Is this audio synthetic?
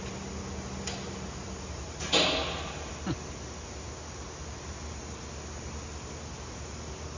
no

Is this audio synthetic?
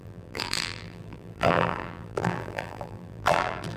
yes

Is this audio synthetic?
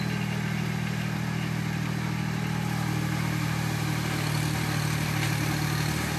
no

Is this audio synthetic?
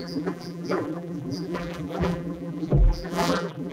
yes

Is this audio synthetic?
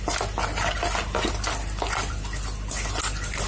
no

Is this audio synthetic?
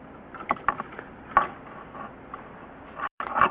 yes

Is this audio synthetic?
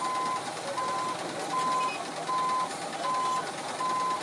no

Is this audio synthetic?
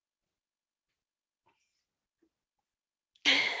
no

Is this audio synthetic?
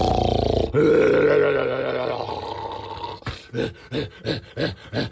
no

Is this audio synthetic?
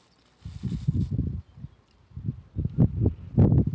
no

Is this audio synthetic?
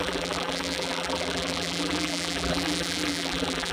yes